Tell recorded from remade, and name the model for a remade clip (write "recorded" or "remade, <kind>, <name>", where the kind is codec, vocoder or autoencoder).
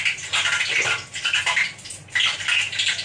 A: recorded